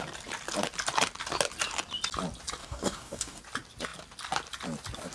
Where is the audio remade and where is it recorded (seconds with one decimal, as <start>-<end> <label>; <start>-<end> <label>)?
0.0-2.6 recorded; 2.6-3.4 remade; 3.4-5.1 recorded